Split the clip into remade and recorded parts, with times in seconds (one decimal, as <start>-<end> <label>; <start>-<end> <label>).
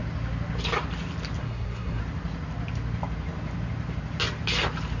0.0-1.4 recorded; 1.4-2.0 remade; 2.0-5.0 recorded